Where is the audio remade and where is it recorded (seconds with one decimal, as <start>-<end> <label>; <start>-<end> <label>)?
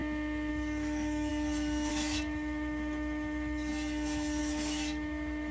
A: 0.0-0.5 recorded; 0.5-1.3 remade; 1.3-1.9 recorded; 1.9-3.7 remade; 3.7-4.4 recorded; 4.4-5.5 remade